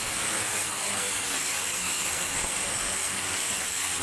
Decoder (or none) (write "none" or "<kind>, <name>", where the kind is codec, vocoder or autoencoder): codec, SNAC